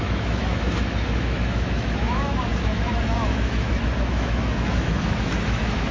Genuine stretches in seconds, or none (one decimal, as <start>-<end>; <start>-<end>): none